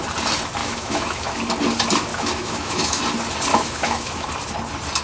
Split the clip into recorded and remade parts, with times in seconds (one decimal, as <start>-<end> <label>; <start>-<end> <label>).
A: 0.0-0.6 recorded; 0.6-1.4 remade; 1.4-2.1 recorded; 2.1-3.0 remade; 3.0-3.5 recorded; 3.5-4.3 remade; 4.3-5.0 recorded